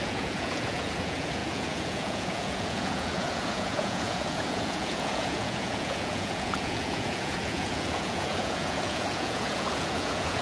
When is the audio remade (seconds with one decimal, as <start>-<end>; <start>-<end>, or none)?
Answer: 0.0-10.4